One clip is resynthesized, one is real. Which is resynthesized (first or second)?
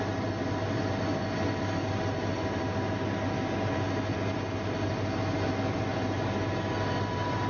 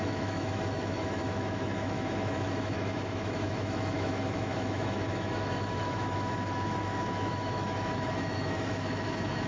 second